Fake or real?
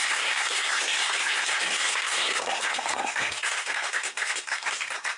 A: fake